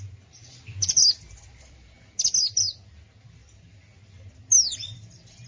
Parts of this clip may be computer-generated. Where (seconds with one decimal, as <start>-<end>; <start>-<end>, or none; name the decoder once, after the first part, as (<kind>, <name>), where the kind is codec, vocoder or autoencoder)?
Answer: none